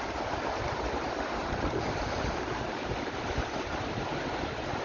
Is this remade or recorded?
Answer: remade